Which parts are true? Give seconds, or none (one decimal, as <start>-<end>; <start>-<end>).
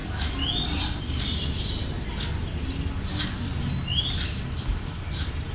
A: 0.0-5.5